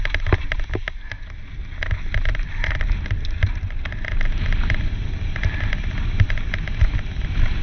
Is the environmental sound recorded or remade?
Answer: recorded